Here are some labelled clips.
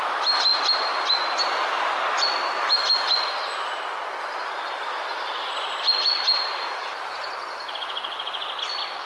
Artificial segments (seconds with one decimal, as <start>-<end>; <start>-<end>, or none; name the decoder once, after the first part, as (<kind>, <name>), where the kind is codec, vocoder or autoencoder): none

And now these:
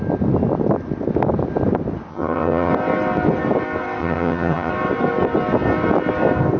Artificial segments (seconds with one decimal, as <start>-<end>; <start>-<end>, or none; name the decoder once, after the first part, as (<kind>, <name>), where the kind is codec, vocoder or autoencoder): 2.1-2.7 (vocoder, HiFi-GAN); 4.0-4.7

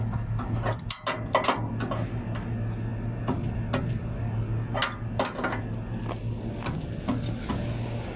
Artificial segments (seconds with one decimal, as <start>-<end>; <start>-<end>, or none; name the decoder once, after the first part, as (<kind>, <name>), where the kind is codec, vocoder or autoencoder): none

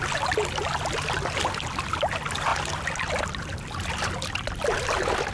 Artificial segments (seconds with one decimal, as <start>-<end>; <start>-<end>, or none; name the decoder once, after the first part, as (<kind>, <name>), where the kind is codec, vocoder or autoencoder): none

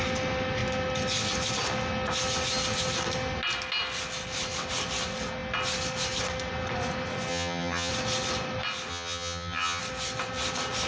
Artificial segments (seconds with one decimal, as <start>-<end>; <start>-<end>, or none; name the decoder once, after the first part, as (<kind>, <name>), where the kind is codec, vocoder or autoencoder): 7.3-7.9 (vocoder, HiFi-GAN); 8.9-9.8